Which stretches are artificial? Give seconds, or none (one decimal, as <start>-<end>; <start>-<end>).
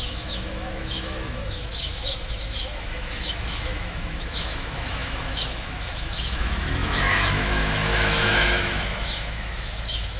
0.0-10.2